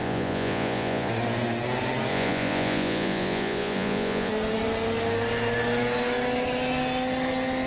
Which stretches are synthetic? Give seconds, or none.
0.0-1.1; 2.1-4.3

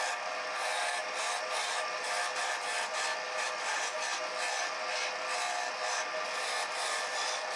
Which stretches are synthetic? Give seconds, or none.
none

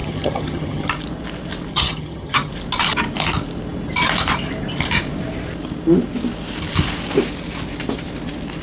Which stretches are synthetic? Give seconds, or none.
0.0-0.9; 1.7-2.5

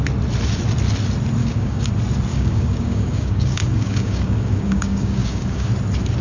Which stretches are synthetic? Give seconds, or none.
1.4-1.9; 2.3-5.7

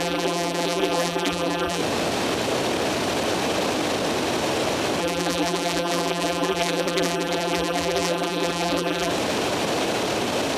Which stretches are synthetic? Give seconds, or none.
0.0-1.8; 5.0-9.1

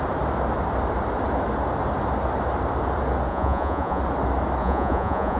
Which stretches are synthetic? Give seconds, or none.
3.3-4.0; 4.6-5.4

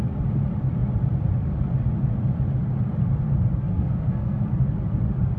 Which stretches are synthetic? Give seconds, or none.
3.7-4.4

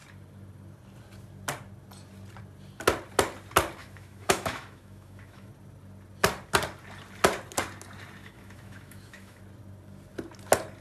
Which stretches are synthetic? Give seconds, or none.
3.8-5.5; 8.2-9.4